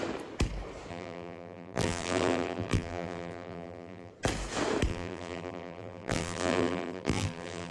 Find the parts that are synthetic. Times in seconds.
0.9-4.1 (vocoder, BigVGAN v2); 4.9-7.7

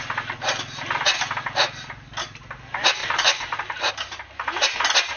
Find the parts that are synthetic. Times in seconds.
3.0-3.9 (vocoder, BigVGAN v2)

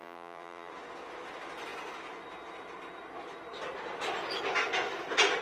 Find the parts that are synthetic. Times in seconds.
0.0-0.7 (vocoder, BigVGAN v2)

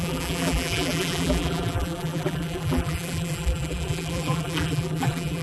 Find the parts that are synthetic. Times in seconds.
0.0-5.4 (vocoder, BigVGAN v2)